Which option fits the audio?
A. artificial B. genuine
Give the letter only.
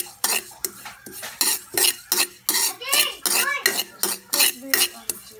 B